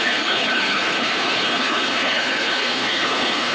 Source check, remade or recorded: remade